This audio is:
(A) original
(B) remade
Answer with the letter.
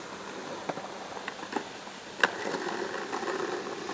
A